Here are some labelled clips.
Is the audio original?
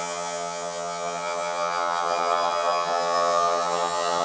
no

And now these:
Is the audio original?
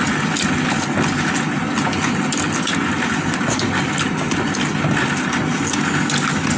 yes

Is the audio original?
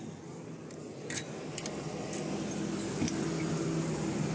yes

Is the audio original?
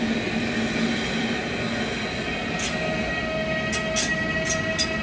yes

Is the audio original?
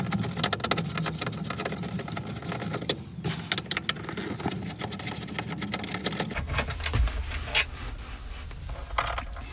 yes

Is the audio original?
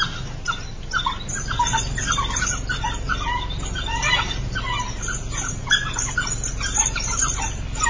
yes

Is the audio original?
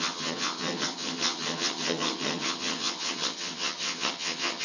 no